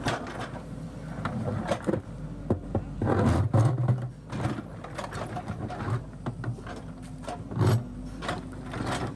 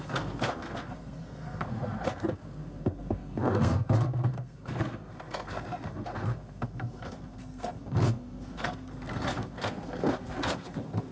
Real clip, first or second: first